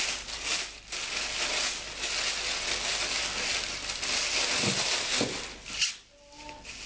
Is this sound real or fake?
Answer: real